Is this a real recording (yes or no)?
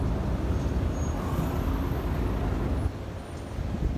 yes